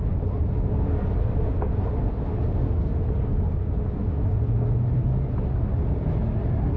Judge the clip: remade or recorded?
recorded